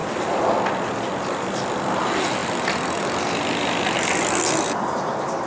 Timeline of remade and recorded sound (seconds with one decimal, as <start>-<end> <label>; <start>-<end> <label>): 0.0-5.5 recorded